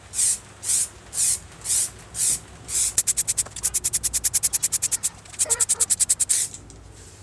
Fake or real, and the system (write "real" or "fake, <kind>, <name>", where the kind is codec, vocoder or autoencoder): real